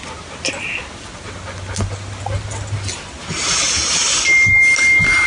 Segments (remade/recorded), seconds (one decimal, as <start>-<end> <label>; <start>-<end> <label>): 0.0-5.3 recorded